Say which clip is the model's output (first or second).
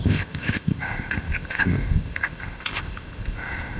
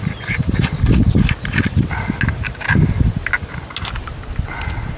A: first